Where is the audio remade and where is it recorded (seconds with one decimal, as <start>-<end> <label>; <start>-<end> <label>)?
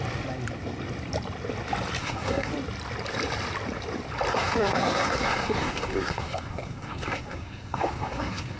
0.0-2.0 recorded; 2.0-2.5 remade; 2.5-4.3 recorded; 4.3-8.6 remade